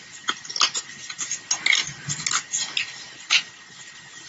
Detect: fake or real real